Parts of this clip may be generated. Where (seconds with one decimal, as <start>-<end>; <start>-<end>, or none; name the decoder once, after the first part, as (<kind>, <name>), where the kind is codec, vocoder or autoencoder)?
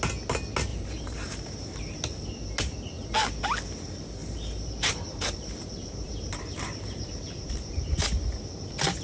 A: 0.7-1.8 (vocoder, BigVGAN v2); 4.2-8.1